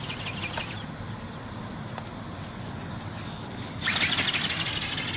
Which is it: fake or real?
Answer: real